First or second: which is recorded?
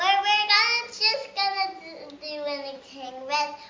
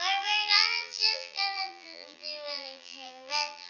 first